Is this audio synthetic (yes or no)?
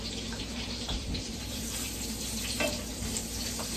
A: yes